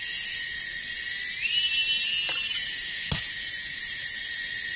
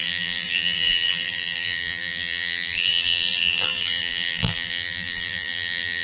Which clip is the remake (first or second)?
second